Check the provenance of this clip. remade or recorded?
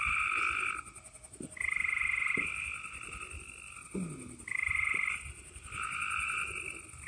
recorded